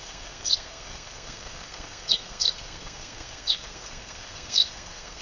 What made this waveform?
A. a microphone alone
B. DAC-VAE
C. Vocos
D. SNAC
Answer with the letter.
D